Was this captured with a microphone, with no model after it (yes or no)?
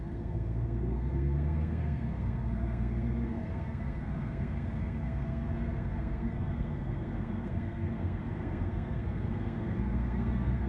no